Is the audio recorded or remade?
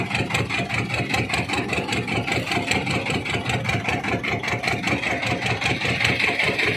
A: recorded